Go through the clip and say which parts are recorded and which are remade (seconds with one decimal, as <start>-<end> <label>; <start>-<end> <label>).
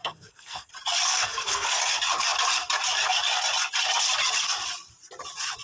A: 0.0-0.7 remade; 0.7-1.1 recorded; 1.1-1.8 remade; 1.8-5.6 recorded